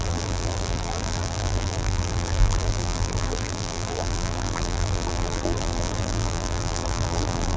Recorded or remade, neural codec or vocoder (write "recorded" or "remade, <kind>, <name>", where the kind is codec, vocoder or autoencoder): remade, vocoder, BigVGAN v2